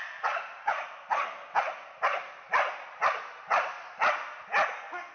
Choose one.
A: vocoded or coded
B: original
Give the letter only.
B